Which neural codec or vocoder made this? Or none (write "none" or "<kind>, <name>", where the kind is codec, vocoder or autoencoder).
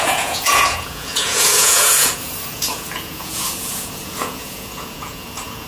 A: vocoder, Vocos